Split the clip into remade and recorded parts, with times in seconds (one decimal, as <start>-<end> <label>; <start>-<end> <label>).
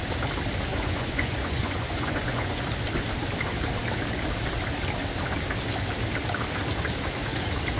0.0-0.7 recorded; 0.7-2.6 remade; 2.6-7.8 recorded